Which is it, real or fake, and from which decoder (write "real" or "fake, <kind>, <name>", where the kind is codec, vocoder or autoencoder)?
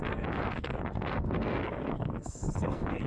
fake, codec, SNAC